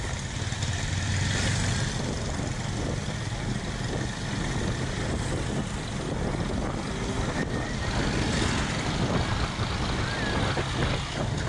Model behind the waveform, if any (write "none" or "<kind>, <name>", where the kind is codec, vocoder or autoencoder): none